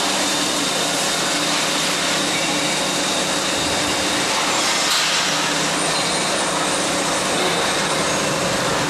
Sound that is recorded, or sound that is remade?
recorded